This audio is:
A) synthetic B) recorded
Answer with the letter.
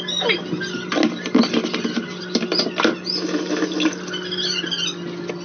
B